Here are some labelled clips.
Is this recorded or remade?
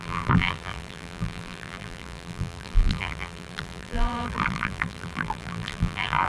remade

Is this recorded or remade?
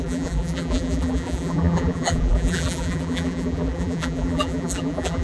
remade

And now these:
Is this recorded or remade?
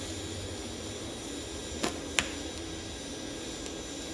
recorded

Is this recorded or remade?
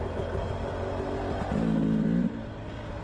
recorded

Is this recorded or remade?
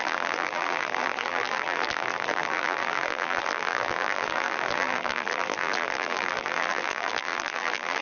remade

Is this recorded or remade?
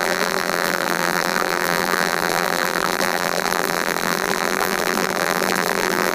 remade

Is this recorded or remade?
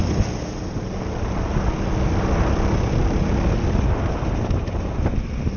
recorded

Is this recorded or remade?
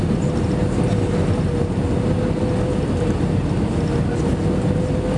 recorded